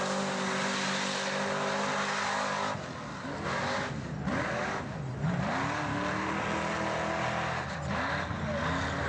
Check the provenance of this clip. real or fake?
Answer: real